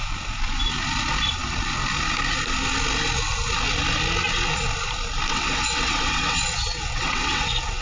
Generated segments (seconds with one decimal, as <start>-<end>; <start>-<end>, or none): 5.3-7.8